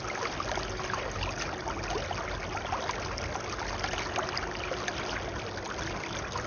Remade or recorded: recorded